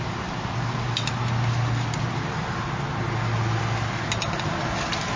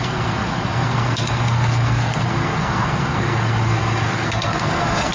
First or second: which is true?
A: first